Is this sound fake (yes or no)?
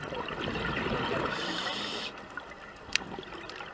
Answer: yes